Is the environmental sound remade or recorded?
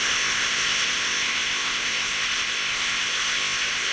remade